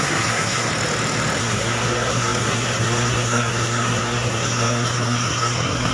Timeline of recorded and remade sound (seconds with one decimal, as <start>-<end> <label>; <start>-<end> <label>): 0.0-0.7 remade; 0.7-1.4 recorded; 1.4-5.9 remade